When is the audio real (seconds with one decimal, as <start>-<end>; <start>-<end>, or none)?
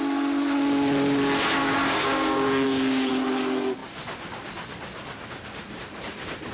0.0-1.6; 3.1-6.5